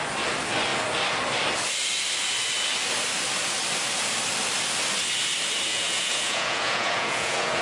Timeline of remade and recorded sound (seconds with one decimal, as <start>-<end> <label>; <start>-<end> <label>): 0.0-5.7 recorded; 5.7-7.6 remade